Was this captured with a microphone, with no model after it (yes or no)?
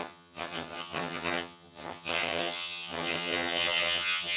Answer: no